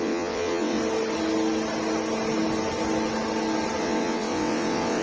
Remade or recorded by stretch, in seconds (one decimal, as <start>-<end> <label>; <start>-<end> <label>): 0.0-0.8 remade; 0.8-3.8 recorded; 3.8-5.0 remade